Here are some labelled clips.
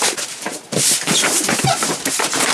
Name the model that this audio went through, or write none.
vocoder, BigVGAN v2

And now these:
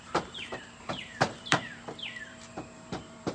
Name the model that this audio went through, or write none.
vocoder, BigVGAN v2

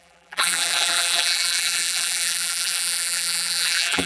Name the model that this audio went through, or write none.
vocoder, BigVGAN v2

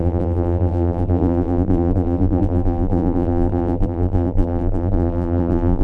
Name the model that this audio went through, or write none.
vocoder, BigVGAN v2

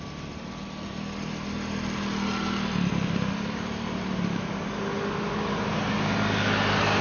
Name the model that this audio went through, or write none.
none